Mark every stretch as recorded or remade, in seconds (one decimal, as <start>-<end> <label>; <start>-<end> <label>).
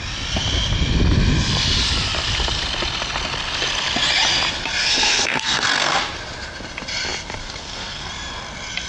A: 0.0-4.8 recorded; 4.8-6.0 remade; 6.0-7.4 recorded; 7.4-8.1 remade; 8.1-8.9 recorded